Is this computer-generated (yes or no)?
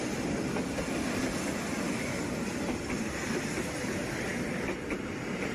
no